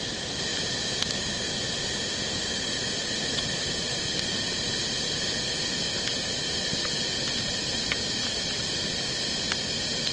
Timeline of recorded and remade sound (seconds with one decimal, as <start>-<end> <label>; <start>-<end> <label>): 0.0-0.5 recorded; 0.5-1.2 remade; 1.2-10.1 recorded